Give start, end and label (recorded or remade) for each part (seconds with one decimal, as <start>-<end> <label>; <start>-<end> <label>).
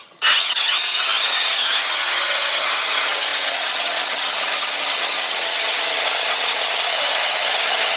0.0-8.0 remade